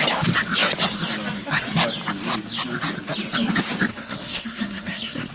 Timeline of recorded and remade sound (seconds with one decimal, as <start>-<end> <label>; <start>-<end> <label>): 0.0-3.9 recorded; 3.9-5.3 remade